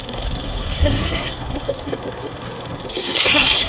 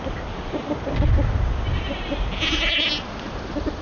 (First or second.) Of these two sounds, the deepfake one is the first